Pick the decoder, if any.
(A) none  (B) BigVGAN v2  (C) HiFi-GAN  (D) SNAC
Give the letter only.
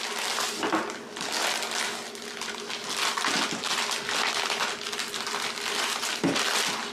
A